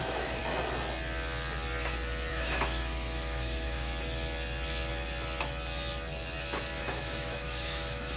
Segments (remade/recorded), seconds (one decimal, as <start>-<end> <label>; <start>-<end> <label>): 0.0-0.4 remade; 0.4-2.3 recorded; 2.3-3.9 remade; 3.9-6.8 recorded; 6.8-8.2 remade